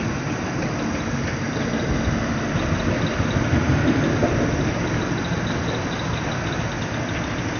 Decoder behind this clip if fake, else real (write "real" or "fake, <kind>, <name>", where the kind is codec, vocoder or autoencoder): real